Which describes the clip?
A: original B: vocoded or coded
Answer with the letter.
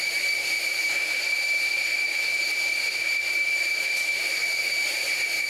B